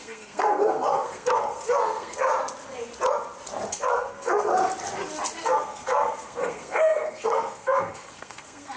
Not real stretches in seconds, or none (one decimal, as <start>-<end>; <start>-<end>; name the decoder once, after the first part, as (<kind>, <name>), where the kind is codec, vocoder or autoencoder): 0.0-2.3 (codec, SNAC); 3.7-4.5; 5.4-8.8